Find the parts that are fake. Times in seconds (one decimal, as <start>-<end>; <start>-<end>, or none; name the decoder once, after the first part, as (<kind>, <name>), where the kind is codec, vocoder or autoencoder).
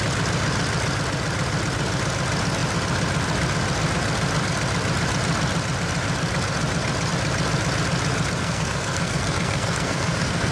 8.4-10.5 (codec, SNAC)